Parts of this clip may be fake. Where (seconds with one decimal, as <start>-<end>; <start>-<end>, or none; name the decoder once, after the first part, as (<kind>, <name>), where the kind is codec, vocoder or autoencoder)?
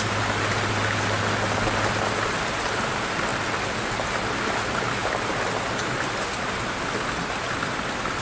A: 3.3-4.1 (vocoder, BigVGAN v2)